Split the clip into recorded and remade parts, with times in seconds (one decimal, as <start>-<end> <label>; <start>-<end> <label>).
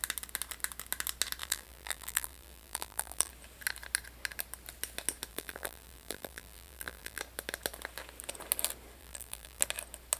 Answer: 0.0-1.4 recorded; 1.4-3.3 remade; 3.3-5.3 recorded; 5.3-7.2 remade; 7.2-9.0 recorded; 9.0-9.6 remade; 9.6-10.2 recorded